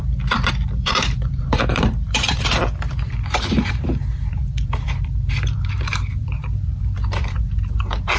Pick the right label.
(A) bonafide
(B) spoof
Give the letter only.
B